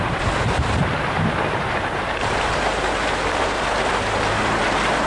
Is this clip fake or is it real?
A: fake